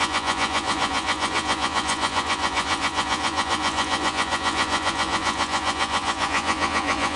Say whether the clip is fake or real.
fake